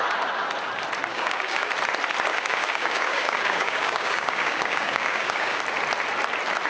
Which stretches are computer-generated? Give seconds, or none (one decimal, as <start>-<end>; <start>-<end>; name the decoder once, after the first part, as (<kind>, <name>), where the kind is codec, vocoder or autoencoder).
1.1-1.7 (codec, DAC); 2.3-5.6